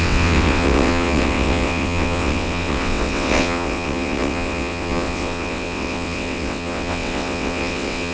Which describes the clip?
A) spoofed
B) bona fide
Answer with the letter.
A